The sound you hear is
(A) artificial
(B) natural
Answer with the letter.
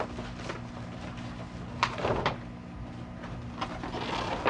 B